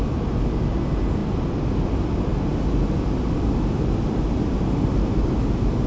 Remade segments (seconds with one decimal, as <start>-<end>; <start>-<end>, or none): none